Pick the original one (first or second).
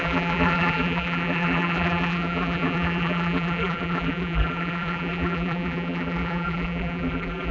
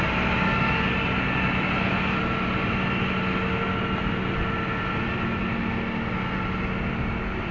second